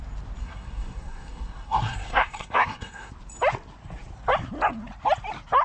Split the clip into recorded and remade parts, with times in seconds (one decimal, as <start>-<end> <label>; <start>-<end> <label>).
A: 0.0-0.4 recorded; 0.4-3.1 remade; 3.1-5.6 recorded